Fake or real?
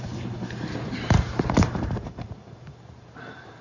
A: fake